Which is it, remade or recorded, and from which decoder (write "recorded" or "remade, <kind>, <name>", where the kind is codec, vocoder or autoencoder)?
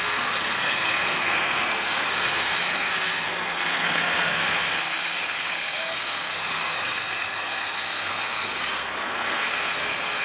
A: remade, codec, SNAC